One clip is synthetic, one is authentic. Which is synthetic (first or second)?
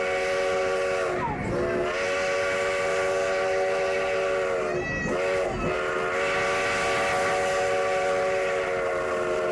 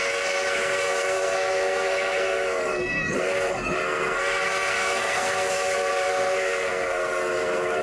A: second